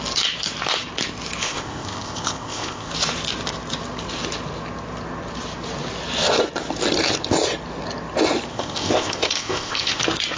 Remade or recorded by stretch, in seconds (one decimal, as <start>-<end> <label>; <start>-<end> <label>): 0.0-1.4 recorded; 1.4-2.9 remade; 2.9-8.5 recorded; 8.5-10.0 remade; 10.0-10.4 recorded